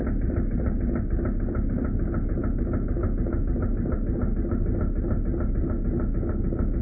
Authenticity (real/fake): real